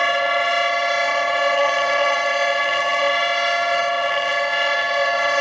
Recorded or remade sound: remade